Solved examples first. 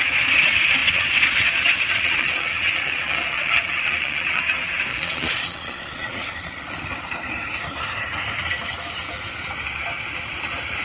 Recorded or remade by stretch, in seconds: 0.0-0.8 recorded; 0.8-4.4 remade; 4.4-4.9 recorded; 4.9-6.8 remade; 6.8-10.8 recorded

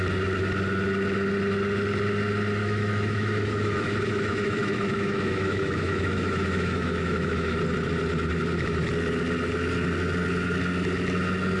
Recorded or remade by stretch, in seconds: 0.0-2.6 recorded; 2.6-7.6 remade; 7.6-11.6 recorded

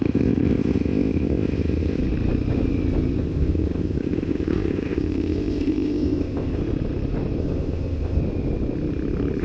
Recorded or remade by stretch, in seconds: 0.0-2.0 remade; 2.0-3.2 recorded; 3.2-6.6 remade; 6.6-7.4 recorded; 7.4-8.2 remade; 8.2-9.4 recorded

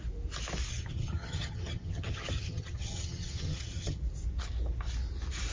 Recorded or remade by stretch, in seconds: 0.0-0.7 recorded; 0.7-4.0 remade; 4.0-5.5 recorded